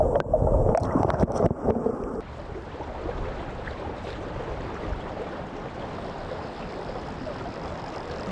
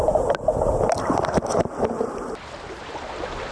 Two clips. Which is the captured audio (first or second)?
second